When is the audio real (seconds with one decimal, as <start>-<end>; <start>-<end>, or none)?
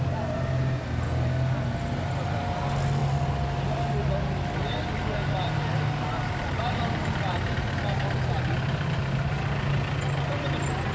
0.0-10.9